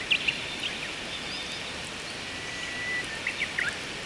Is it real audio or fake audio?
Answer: real